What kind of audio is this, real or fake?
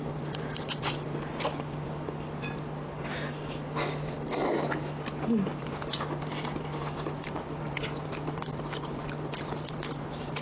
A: real